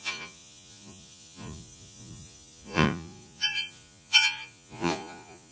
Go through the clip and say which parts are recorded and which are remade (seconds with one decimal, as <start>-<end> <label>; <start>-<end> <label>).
0.0-5.5 remade

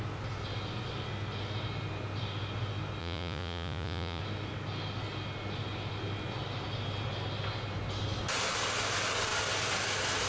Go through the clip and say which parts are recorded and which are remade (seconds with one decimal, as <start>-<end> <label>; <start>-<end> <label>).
0.0-3.0 recorded; 3.0-4.2 remade; 4.2-10.3 recorded

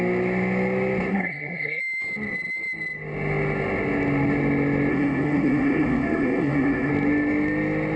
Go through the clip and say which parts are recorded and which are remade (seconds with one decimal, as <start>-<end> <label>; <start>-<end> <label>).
0.0-1.1 recorded; 1.1-1.8 remade; 1.8-4.9 recorded; 4.9-6.9 remade; 6.9-8.0 recorded

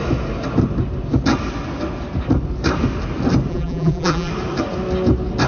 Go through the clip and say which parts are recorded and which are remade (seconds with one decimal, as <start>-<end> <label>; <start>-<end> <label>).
0.0-3.5 recorded; 3.5-4.3 remade; 4.3-5.5 recorded

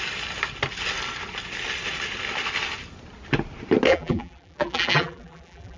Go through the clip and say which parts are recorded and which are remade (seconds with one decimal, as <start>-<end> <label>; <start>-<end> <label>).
0.0-3.9 recorded; 3.9-5.8 remade

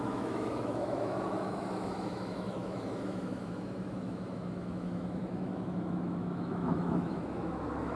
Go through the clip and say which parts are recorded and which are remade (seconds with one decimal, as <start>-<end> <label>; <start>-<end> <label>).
0.0-8.0 remade